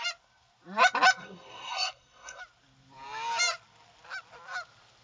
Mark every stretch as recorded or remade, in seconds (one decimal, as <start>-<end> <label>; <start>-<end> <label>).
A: 0.0-1.2 recorded; 1.2-2.4 remade; 2.4-5.0 recorded